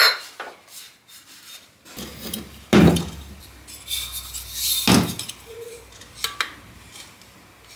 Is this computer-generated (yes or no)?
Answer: no